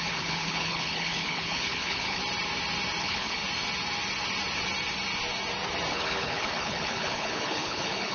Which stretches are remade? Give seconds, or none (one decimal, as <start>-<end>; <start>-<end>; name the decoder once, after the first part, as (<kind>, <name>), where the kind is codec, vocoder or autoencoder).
0.0-2.2 (codec, HILCodec); 3.0-3.4; 5.9-8.1